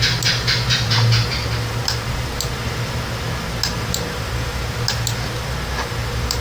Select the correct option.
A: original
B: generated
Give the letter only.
A